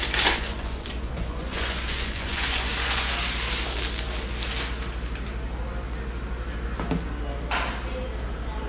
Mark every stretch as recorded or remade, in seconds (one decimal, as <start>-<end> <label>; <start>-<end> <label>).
0.0-0.4 recorded; 0.4-3.1 remade; 3.1-8.7 recorded